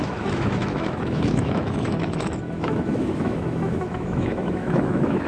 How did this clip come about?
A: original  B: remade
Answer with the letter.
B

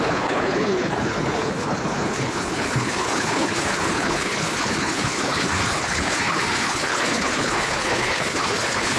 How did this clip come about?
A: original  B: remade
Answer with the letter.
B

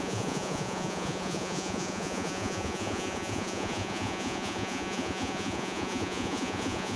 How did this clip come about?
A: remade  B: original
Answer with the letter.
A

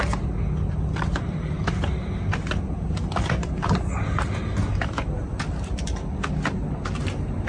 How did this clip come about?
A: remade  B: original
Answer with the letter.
B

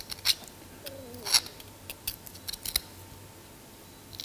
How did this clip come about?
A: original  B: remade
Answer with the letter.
A